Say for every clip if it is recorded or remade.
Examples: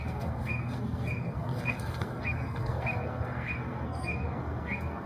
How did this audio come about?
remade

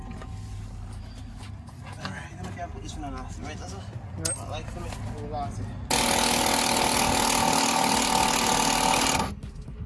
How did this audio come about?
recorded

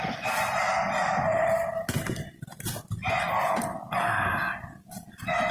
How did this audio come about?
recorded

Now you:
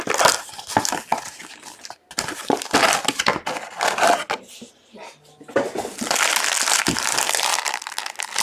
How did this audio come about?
recorded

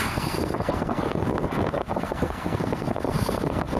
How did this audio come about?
remade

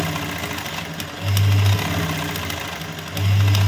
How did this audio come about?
recorded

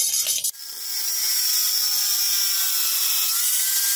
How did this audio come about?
recorded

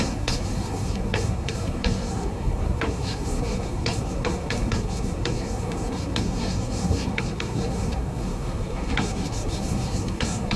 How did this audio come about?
remade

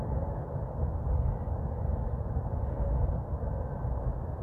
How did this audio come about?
recorded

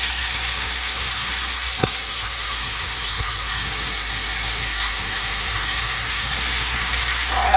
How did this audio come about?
remade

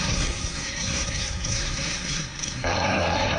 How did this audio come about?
remade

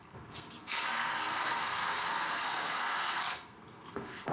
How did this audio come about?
remade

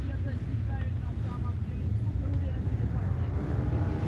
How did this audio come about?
recorded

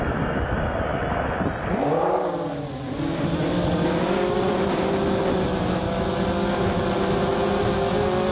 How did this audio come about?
recorded